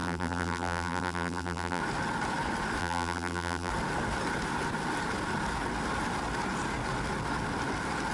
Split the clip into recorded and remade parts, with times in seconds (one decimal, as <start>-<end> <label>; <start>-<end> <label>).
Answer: 0.0-1.8 remade; 1.8-2.8 recorded; 2.8-3.7 remade; 3.7-8.1 recorded